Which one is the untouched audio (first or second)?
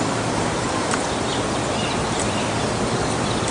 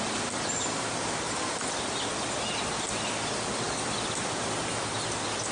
second